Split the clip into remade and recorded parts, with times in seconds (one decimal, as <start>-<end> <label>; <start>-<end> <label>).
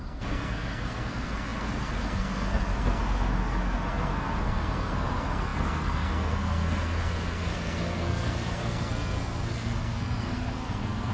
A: 0.0-11.1 remade